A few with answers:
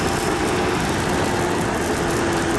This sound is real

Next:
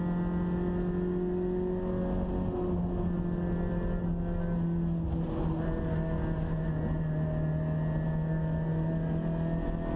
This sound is real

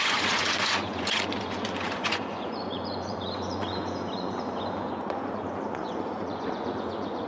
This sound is fake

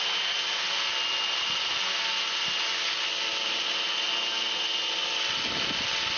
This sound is real